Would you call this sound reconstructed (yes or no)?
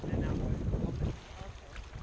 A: no